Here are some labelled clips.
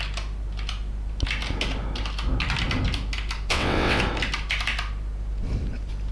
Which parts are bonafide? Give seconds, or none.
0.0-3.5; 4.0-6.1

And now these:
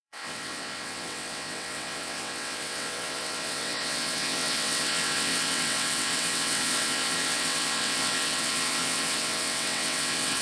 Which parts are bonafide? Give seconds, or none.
none

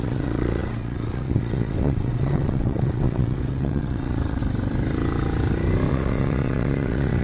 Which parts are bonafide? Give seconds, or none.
4.4-5.9

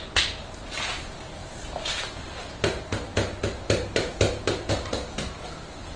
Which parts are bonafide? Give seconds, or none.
0.0-6.0

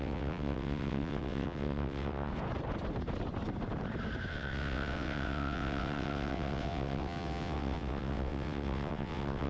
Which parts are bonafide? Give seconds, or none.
2.3-4.3

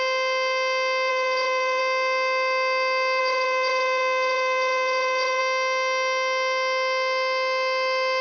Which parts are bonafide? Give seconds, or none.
0.0-1.1; 1.8-3.2; 5.4-8.2